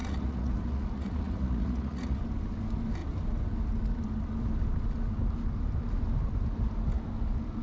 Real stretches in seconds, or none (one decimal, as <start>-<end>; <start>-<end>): 2.2-7.6